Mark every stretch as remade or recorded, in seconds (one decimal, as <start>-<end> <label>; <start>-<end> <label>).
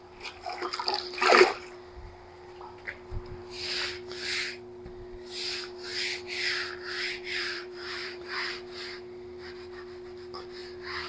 0.0-7.4 recorded; 7.4-8.5 remade; 8.5-11.1 recorded